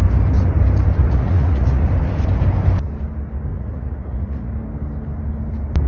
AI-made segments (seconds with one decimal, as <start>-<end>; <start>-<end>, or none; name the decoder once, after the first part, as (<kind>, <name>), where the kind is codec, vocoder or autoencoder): 1.0-1.9 (vocoder, Vocos); 3.5-4.5